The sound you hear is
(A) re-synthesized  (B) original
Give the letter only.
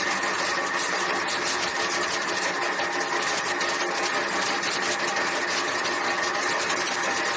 B